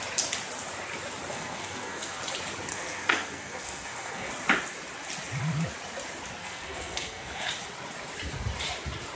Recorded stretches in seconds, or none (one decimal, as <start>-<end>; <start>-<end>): 0.0-1.3; 2.2-2.7; 4.3-6.4; 7.5-9.2